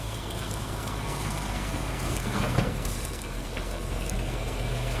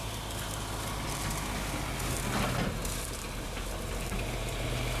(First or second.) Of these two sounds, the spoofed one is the first